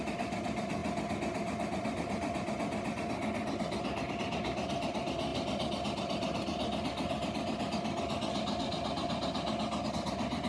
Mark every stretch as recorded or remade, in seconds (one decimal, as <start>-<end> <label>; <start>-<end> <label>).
0.0-10.5 recorded